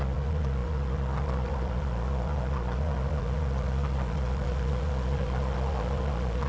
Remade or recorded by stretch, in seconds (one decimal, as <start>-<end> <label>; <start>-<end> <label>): 0.0-6.5 remade